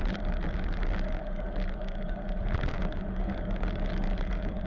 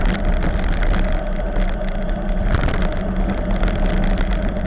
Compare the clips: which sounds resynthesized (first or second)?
first